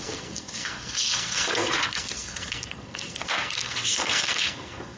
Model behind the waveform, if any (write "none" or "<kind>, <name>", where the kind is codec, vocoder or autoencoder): codec, SNAC